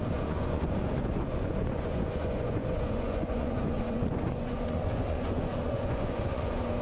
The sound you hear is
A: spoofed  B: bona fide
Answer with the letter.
A